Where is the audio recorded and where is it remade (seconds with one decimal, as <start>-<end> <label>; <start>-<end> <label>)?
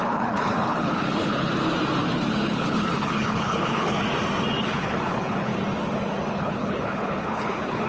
0.0-1.5 remade; 1.5-2.3 recorded; 2.3-4.0 remade; 4.0-4.6 recorded; 4.6-5.5 remade; 5.5-6.3 recorded; 6.3-7.9 remade